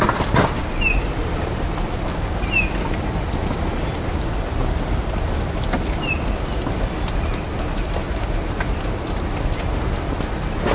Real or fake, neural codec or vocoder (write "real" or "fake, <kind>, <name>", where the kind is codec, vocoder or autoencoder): real